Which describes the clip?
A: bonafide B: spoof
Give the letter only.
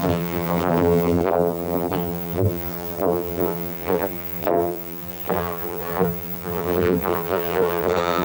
B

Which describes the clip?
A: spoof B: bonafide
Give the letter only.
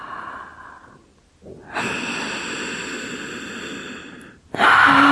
B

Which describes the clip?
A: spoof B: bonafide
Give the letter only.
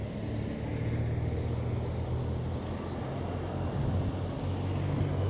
B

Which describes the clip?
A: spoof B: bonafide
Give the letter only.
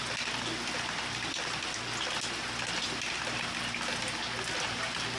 B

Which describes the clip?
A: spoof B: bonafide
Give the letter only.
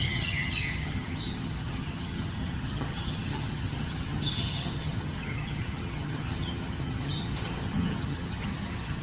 A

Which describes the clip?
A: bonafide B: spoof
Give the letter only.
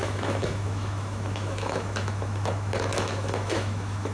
B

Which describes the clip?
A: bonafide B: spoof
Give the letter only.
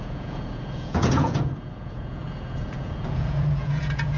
B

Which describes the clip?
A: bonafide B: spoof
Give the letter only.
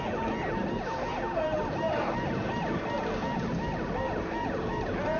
A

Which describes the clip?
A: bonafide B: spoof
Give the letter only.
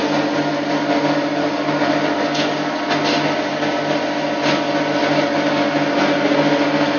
A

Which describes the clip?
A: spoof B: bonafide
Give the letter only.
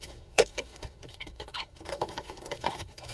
A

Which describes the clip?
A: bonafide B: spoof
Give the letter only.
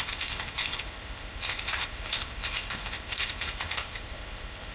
B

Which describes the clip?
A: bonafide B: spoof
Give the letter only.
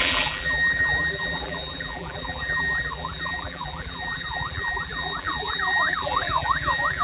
B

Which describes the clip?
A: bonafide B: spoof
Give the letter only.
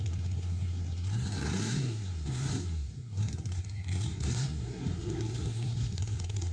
B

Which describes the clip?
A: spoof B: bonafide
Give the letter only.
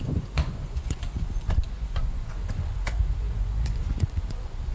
A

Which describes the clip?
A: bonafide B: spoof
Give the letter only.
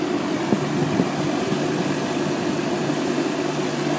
A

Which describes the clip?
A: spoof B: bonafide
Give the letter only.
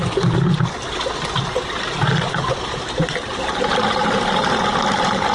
B